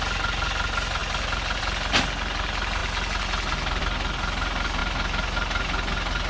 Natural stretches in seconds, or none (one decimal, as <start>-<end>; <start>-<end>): 0.0-6.3